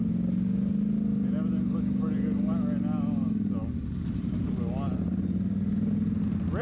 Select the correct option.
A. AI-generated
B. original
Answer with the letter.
B